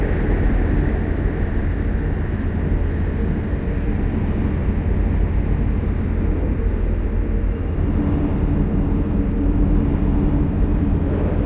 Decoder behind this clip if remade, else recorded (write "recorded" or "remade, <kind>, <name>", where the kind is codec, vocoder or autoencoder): recorded